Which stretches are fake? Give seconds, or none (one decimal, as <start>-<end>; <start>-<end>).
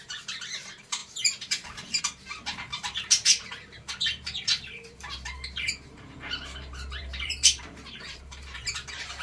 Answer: 0.0-9.2